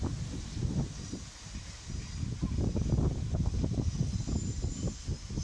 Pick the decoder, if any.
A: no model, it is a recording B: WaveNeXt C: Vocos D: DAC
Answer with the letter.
A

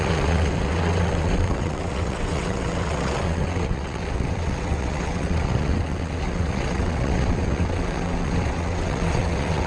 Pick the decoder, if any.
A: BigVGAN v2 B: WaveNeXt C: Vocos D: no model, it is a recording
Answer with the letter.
B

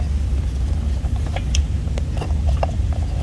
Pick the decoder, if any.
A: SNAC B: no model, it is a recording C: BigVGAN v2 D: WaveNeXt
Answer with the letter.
B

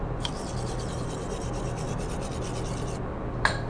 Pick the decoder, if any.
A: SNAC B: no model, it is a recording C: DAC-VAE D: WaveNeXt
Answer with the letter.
B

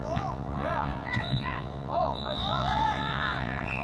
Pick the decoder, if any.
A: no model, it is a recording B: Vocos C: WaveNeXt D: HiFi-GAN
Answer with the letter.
C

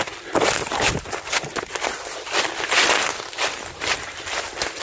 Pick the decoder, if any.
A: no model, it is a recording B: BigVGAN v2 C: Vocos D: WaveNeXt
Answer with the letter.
A